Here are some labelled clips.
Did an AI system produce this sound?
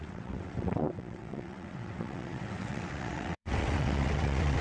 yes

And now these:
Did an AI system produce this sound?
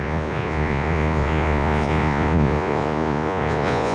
yes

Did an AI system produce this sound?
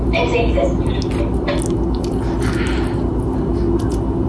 no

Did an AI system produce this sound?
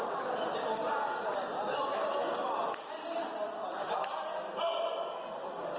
no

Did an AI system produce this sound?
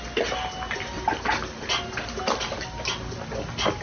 no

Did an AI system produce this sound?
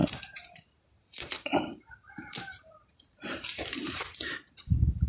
yes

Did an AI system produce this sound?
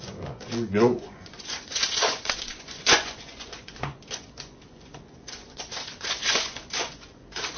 yes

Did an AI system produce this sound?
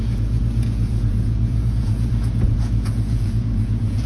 yes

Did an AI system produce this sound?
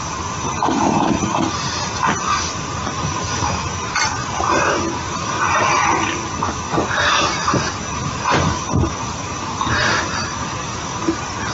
no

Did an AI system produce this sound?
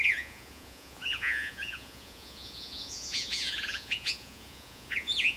yes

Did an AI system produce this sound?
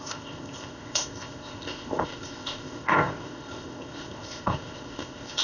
yes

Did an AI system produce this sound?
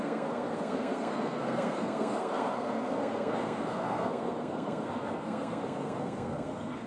yes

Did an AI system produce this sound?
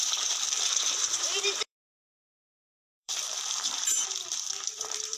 yes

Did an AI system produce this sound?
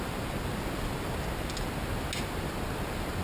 no